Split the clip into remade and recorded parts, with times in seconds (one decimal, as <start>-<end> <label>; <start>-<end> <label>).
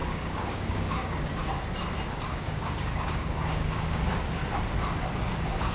0.0-1.4 remade; 1.4-2.3 recorded; 2.3-4.4 remade; 4.4-5.3 recorded; 5.3-5.7 remade